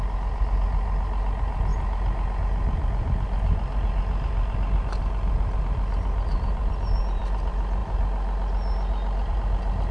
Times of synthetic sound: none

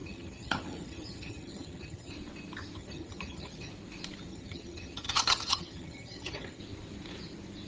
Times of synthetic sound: 0.0-2.1 (vocoder, HiFi-GAN); 2.8-3.7; 4.3-6.6

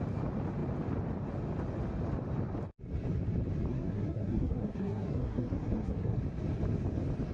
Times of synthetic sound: 3.7-6.2 (codec, SNAC)

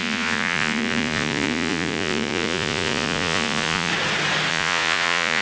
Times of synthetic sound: 0.0-3.9 (vocoder, Vocos); 4.5-5.4